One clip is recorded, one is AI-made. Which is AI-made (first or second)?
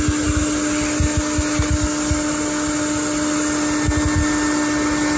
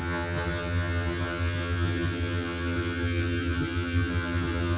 second